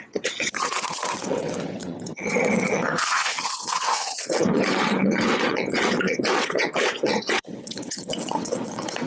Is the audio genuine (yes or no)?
no